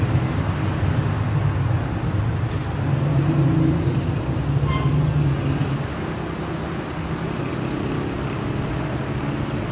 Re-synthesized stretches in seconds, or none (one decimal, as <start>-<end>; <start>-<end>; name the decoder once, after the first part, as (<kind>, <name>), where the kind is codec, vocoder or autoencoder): none